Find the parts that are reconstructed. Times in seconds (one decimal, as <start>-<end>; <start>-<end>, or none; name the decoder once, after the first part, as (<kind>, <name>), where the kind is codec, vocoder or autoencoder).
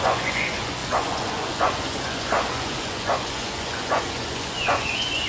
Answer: 0.0-5.3 (vocoder, Vocos)